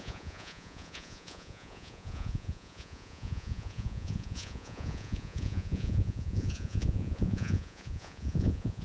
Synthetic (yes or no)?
yes